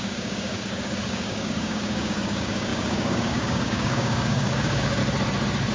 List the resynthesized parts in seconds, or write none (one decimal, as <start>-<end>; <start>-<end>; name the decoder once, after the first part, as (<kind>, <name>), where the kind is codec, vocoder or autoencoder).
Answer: 0.0-5.0 (codec, DAC)

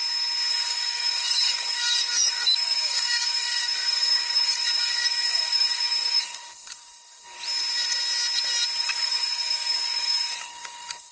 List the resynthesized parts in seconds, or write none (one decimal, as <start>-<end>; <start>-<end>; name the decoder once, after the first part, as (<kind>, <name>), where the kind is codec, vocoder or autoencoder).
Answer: 0.5-6.9 (codec, DAC); 8.8-11.1

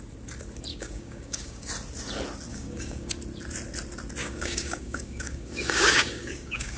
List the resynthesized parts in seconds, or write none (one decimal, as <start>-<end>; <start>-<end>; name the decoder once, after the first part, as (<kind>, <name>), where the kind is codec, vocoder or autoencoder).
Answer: 0.7-1.7 (codec, DAC); 2.5-3.1; 4.2-6.8

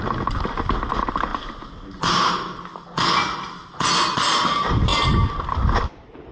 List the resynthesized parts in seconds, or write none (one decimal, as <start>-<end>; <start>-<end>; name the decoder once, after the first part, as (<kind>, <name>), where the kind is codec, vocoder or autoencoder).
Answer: none

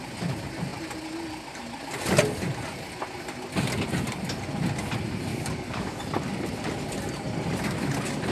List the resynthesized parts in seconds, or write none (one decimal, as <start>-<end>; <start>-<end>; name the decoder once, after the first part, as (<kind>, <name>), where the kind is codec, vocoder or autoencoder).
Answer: 5.3-6.0 (codec, DAC)